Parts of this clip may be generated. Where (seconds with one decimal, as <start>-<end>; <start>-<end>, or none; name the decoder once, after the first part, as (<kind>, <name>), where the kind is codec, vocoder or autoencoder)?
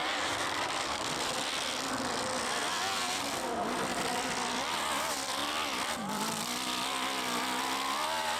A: 0.0-0.8 (vocoder, BigVGAN v2); 3.9-4.8; 5.4-5.9